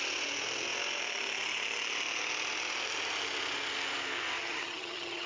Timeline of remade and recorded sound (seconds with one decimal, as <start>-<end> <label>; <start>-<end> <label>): 0.0-4.4 recorded; 4.4-5.3 remade